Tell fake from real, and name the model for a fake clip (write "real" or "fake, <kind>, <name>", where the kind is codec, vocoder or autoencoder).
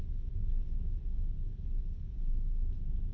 real